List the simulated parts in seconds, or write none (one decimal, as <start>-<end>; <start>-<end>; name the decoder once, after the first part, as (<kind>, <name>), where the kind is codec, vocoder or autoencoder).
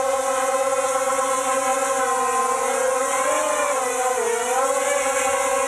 none